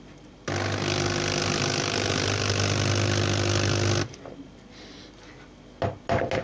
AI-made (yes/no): no